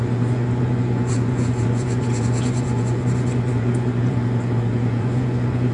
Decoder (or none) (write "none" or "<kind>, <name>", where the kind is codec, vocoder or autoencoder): vocoder, Vocos